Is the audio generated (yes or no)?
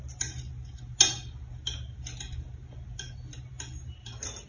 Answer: no